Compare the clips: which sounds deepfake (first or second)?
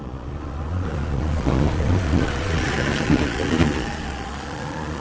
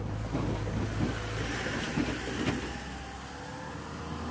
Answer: first